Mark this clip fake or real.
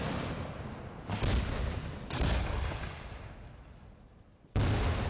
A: real